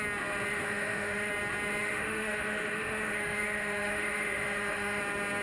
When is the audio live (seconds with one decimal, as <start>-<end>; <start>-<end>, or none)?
0.0-0.5; 1.3-1.8; 5.0-5.4